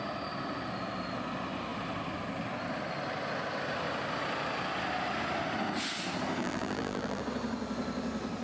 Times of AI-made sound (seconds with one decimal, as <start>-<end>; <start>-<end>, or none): 6.4-7.2

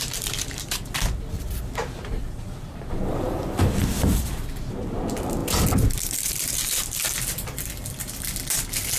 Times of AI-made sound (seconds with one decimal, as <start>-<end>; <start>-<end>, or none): 0.0-5.0

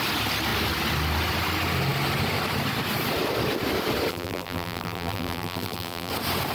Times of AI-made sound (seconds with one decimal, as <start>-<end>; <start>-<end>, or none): 4.1-6.1

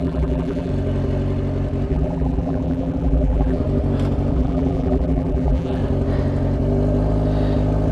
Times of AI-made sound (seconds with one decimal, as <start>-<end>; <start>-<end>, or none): 0.0-0.7; 1.9-3.6; 4.3-5.8

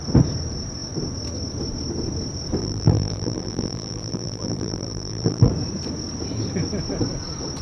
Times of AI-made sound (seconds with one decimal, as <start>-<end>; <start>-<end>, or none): 2.6-5.5

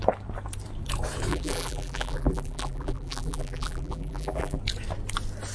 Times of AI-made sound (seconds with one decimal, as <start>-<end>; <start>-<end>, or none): 1.3-4.6